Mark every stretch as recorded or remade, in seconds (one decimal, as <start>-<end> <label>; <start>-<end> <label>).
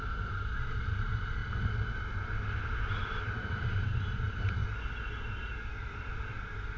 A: 0.0-4.6 remade; 4.6-6.8 recorded